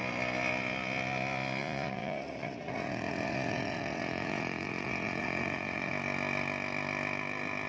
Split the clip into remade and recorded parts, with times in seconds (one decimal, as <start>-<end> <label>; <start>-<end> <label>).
0.0-1.6 recorded; 1.6-5.9 remade; 5.9-7.7 recorded

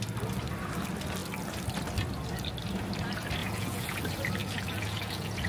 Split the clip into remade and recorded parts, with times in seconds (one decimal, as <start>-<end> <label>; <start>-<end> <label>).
0.0-3.4 recorded; 3.4-4.0 remade; 4.0-4.4 recorded; 4.4-5.5 remade